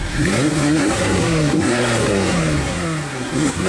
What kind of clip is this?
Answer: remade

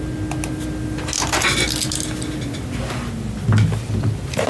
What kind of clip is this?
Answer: recorded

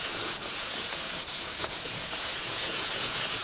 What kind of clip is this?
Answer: remade